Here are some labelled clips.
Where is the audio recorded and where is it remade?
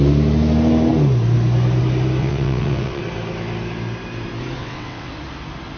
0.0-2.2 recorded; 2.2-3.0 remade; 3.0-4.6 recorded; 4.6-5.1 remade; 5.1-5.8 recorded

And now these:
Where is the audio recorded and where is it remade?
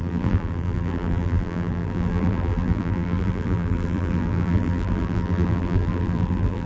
0.0-6.7 remade